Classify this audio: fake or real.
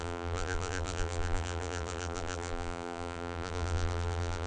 fake